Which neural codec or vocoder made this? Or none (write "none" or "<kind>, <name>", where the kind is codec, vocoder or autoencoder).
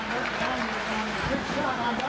none